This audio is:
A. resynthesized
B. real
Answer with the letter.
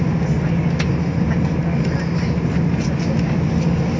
B